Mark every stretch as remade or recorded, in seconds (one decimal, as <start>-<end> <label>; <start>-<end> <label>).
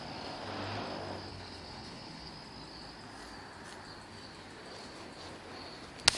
0.0-1.3 recorded; 1.3-2.3 remade; 2.3-6.2 recorded